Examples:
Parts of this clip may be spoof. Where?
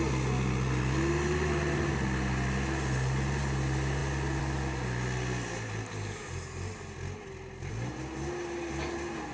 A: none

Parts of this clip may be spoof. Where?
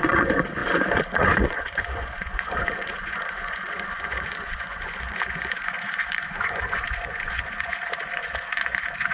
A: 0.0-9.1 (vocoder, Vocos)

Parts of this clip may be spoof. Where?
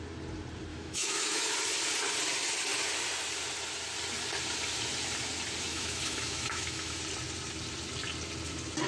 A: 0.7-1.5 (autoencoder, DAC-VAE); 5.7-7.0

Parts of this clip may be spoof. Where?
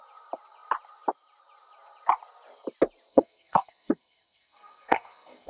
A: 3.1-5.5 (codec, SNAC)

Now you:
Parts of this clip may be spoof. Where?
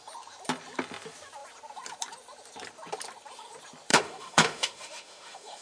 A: 3.9-5.6 (autoencoder, DAC-VAE)